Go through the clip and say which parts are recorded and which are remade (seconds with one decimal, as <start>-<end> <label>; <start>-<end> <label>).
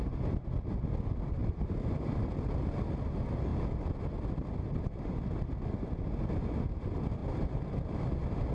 0.0-1.4 recorded; 1.4-2.5 remade; 2.5-3.5 recorded; 3.5-4.6 remade; 4.6-7.2 recorded; 7.2-8.5 remade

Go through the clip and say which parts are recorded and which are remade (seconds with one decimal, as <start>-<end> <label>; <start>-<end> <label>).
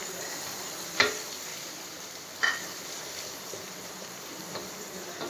0.0-1.0 remade; 1.0-1.5 recorded; 1.5-4.7 remade; 4.7-5.3 recorded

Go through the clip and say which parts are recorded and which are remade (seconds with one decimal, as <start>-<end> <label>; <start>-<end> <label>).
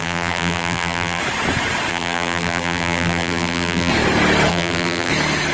0.0-1.2 remade; 1.2-1.9 recorded; 1.9-3.9 remade; 3.9-4.5 recorded; 4.5-5.1 remade; 5.1-5.5 recorded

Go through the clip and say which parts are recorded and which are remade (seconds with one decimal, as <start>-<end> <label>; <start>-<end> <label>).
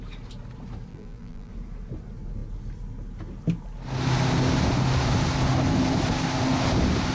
0.0-0.9 recorded; 0.9-1.5 remade; 1.5-7.1 recorded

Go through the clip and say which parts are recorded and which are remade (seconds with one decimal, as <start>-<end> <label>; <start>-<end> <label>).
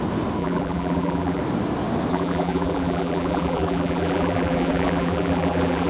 0.0-0.4 recorded; 0.4-1.4 remade; 1.4-2.1 recorded; 2.1-5.9 remade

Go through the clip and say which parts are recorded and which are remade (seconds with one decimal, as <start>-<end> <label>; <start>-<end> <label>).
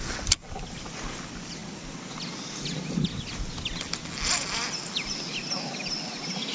0.0-6.5 recorded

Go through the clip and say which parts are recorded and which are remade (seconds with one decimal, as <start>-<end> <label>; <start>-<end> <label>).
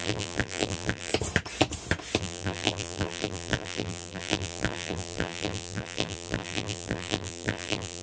0.0-1.1 remade; 1.1-2.2 recorded; 2.2-8.0 remade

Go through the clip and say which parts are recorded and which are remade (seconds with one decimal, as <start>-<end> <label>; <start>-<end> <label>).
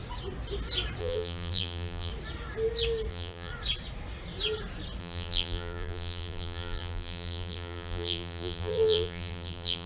0.0-1.0 recorded; 1.0-2.1 remade; 2.1-3.1 recorded; 3.1-3.5 remade; 3.5-5.0 recorded; 5.0-9.9 remade